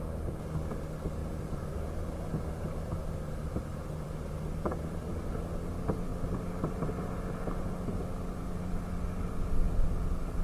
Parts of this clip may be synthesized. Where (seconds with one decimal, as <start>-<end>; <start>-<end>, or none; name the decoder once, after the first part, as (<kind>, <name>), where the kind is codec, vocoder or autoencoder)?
1.2-3.0 (vocoder, BigVGAN v2); 3.7-5.3